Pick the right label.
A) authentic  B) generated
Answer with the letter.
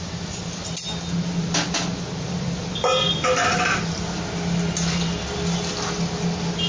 A